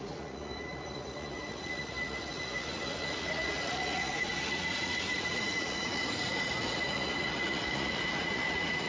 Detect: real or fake fake